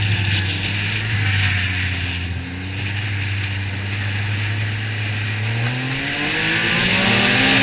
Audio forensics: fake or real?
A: real